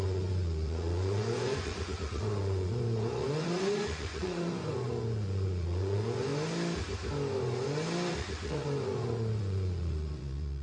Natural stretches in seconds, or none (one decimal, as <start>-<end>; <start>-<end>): 6.3-8.1